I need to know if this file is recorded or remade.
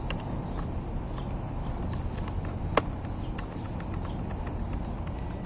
recorded